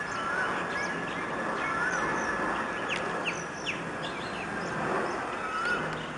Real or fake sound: real